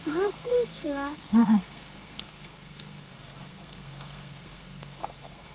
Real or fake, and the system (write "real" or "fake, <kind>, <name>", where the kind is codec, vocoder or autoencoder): fake, codec, SNAC